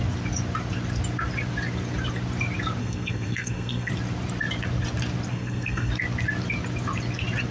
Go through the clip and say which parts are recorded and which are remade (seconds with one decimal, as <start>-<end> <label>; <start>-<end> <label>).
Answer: 0.0-2.8 recorded; 2.8-3.9 remade; 3.9-5.3 recorded; 5.3-5.9 remade; 5.9-7.5 recorded